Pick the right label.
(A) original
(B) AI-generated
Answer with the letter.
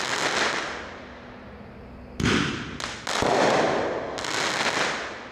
A